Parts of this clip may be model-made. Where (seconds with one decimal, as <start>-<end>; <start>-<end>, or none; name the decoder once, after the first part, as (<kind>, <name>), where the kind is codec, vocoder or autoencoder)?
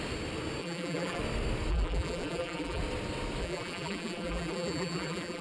0.6-1.2 (vocoder, BigVGAN v2); 1.7-2.8; 3.4-5.4